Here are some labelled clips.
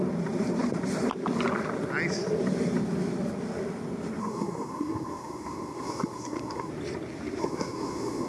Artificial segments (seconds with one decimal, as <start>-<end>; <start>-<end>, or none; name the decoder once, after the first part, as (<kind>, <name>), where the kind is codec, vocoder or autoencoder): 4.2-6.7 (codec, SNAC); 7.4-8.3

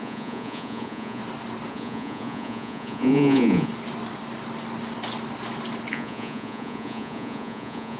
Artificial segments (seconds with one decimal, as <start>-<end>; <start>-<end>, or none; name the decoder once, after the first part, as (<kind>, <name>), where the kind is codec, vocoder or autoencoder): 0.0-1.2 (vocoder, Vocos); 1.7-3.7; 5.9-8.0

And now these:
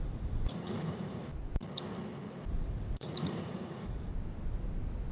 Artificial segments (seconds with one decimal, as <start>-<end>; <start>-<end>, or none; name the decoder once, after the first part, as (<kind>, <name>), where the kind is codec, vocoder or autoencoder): 0.0-1.3 (vocoder, Vocos); 2.5-4.1

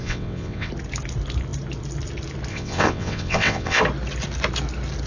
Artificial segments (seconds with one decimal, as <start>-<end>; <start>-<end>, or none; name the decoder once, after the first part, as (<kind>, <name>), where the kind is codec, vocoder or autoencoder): 0.0-0.7 (vocoder, WaveNeXt); 2.5-3.8

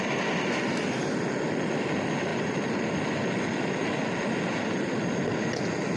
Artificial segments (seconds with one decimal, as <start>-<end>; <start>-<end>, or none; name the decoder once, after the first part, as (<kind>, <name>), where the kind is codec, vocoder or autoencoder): none